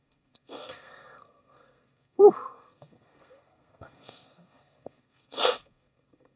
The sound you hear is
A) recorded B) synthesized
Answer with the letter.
B